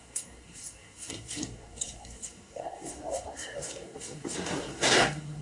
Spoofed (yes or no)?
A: yes